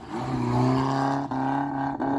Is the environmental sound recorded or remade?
recorded